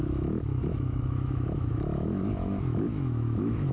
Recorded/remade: remade